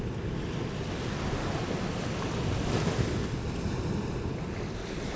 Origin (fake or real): real